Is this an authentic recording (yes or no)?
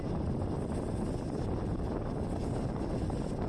yes